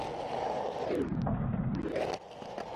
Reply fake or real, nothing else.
real